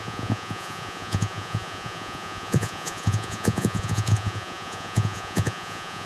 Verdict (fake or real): fake